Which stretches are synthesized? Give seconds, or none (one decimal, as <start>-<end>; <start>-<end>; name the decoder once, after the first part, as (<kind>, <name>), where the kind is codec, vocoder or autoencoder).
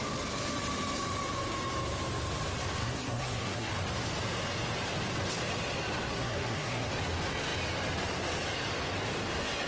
2.8-3.7 (codec, SNAC); 6.1-6.9